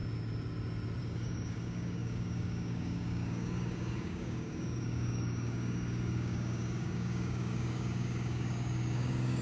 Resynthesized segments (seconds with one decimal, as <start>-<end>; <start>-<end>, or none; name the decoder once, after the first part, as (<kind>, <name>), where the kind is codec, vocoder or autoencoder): 1.0-9.4 (codec, DAC)